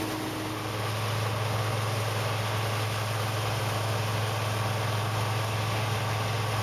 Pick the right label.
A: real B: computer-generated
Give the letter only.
A